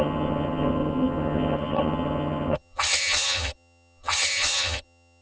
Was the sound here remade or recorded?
remade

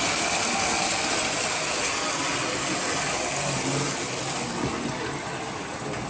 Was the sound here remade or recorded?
recorded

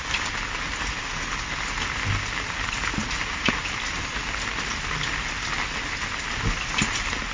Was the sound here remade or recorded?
recorded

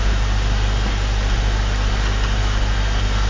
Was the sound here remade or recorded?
recorded